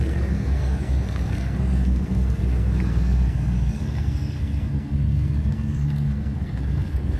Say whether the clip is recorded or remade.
remade